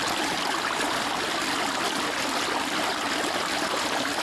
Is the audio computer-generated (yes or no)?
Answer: no